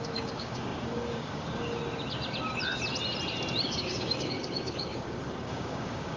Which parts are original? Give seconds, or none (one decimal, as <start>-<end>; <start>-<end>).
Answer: 1.8-3.6